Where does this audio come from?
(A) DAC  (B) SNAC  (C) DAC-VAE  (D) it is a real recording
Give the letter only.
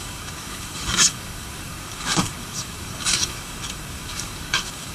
A